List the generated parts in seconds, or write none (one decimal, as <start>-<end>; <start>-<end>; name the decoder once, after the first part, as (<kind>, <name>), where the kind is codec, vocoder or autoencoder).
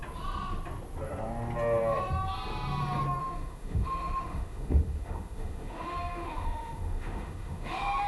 3.2-8.1 (autoencoder, DAC-VAE)